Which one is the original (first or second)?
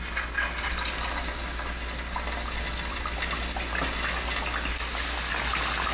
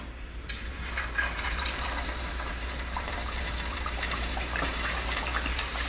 first